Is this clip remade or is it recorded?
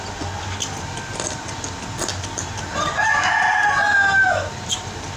recorded